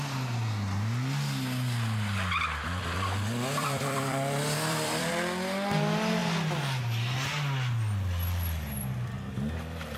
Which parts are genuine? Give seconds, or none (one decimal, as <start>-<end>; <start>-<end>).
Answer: 0.0-3.6; 5.1-10.0